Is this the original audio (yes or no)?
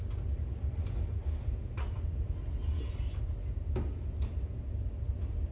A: yes